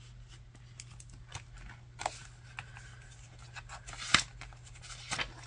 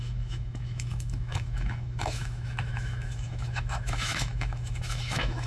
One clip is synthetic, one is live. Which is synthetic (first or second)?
second